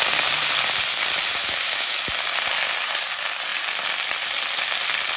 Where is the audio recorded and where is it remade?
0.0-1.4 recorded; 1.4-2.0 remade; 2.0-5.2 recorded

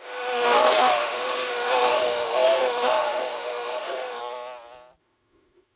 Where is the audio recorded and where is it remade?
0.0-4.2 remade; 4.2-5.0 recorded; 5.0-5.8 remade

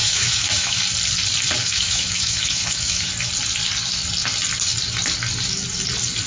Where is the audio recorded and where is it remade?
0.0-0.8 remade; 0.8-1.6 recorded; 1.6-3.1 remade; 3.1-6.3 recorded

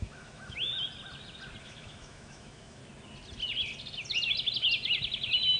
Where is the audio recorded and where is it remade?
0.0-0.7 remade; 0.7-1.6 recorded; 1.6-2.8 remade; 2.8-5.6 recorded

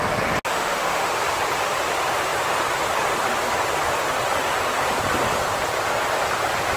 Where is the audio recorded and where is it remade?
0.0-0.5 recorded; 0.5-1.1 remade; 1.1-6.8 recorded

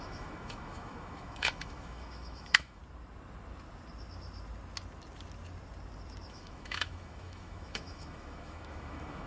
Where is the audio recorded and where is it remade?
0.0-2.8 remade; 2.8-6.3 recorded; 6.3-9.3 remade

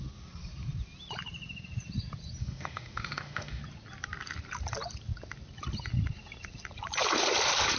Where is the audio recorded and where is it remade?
0.0-2.4 recorded; 2.4-3.6 remade; 3.6-7.8 recorded

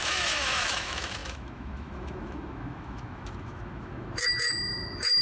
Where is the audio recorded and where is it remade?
0.0-5.2 remade